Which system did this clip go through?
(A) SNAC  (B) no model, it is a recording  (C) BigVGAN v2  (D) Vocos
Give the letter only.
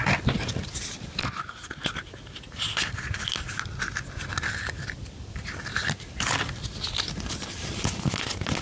B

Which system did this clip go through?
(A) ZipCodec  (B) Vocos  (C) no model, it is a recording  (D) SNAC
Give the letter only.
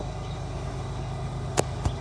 C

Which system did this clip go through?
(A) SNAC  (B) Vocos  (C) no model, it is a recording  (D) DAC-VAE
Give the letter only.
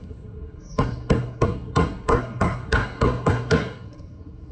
A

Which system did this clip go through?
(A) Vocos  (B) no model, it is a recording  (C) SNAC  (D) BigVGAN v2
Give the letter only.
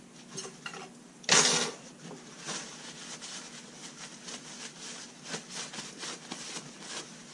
B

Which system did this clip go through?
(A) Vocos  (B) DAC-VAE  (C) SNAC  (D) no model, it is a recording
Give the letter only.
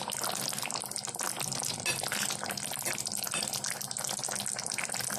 D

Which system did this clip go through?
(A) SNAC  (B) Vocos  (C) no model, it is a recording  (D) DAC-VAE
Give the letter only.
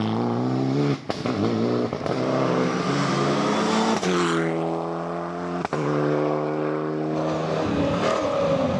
C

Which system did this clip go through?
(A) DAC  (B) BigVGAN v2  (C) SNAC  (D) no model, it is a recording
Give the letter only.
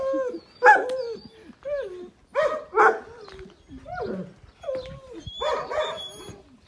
D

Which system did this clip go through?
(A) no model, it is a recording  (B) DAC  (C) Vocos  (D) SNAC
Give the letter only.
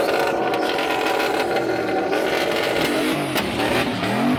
A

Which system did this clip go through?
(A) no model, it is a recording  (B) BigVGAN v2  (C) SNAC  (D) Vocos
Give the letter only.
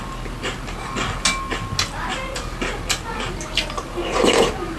A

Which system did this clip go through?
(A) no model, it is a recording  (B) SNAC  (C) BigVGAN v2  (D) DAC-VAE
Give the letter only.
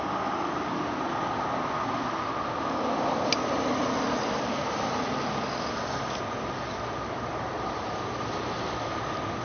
A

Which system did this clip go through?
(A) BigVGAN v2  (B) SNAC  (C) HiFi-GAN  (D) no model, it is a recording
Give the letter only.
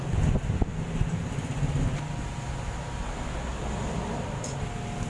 D